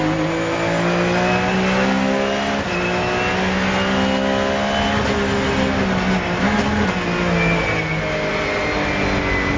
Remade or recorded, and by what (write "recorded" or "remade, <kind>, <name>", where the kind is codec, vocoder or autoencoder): recorded